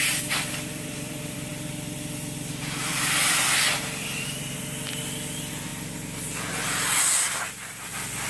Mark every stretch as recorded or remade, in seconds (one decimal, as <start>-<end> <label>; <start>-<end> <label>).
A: 0.0-8.3 remade